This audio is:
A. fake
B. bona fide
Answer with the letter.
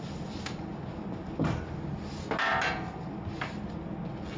B